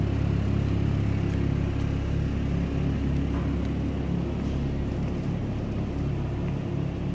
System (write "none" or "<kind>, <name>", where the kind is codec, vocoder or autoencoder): none